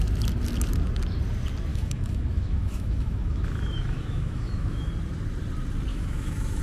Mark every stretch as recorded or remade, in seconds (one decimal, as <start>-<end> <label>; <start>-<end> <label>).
0.0-1.7 recorded; 1.7-4.9 remade; 4.9-5.9 recorded; 5.9-6.6 remade